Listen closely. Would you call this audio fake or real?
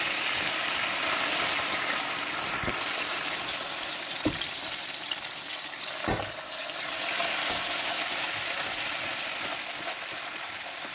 real